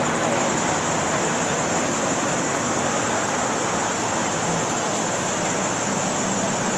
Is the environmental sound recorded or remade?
recorded